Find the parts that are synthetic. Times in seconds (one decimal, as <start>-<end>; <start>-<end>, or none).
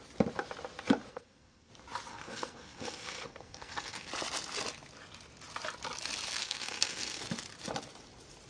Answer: 1.1-1.7; 2.1-4.1; 6.4-7.2